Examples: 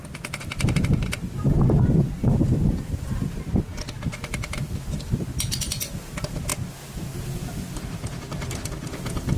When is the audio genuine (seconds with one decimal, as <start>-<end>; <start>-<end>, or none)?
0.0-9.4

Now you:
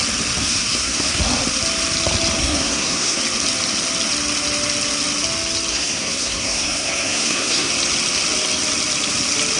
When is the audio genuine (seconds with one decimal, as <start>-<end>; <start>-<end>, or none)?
0.0-0.4; 1.2-2.4; 3.2-5.7; 7.7-9.6

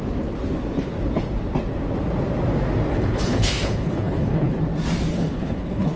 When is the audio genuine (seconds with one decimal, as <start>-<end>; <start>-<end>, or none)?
0.0-2.9; 4.6-5.1

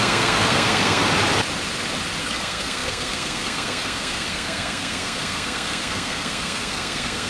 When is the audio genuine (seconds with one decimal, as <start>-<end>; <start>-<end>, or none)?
1.0-2.2

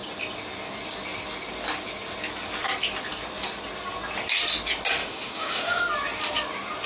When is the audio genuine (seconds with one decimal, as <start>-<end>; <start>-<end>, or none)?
0.0-5.0; 5.8-6.9